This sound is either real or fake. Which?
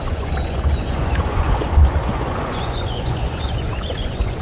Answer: fake